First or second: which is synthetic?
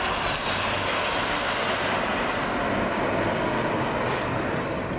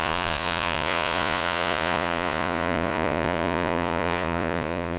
second